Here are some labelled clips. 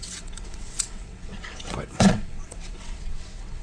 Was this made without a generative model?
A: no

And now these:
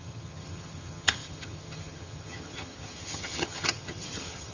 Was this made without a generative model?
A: no